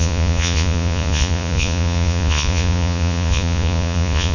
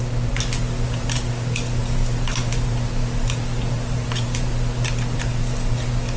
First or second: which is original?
second